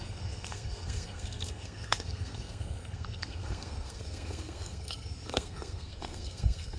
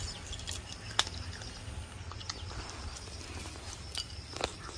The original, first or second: second